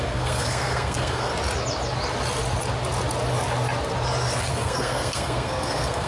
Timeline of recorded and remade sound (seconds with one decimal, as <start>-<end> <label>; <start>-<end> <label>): 0.0-1.3 remade; 1.3-4.5 recorded; 4.5-6.1 remade